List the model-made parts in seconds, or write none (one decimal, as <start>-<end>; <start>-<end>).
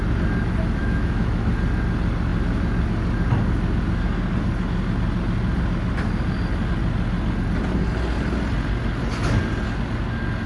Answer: 0.8-1.5